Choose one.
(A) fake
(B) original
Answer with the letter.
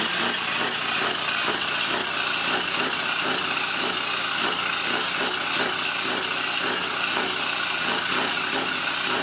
B